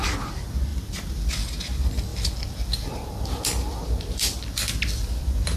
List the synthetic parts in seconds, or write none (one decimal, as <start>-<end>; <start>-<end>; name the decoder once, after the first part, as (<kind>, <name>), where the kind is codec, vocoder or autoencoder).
0.7-1.3 (vocoder, BigVGAN v2); 2.1-5.6